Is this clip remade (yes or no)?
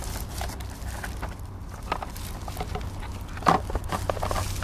no